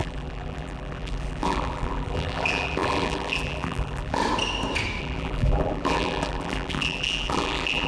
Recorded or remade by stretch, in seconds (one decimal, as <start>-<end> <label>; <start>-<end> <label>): 0.0-4.2 remade; 4.2-5.0 recorded; 5.0-7.9 remade